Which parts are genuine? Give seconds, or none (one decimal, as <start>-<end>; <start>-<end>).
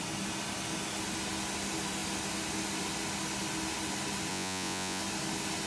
0.0-4.3; 5.0-5.7